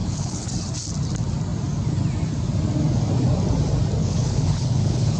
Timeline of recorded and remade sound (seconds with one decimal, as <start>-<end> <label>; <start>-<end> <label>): 0.0-0.5 remade; 0.5-4.0 recorded; 4.0-5.2 remade